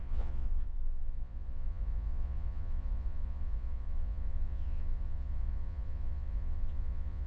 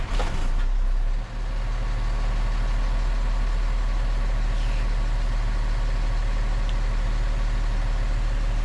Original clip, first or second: second